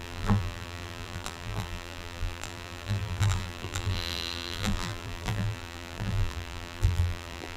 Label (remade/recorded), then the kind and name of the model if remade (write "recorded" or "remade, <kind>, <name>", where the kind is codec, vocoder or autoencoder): remade, vocoder, BigVGAN v2